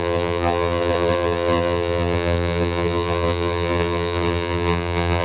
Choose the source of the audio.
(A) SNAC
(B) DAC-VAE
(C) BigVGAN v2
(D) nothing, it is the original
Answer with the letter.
C